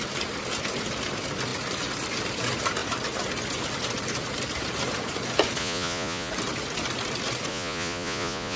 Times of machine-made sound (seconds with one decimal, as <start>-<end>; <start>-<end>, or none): 5.6-6.3; 7.5-8.6